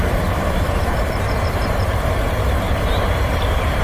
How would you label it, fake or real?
fake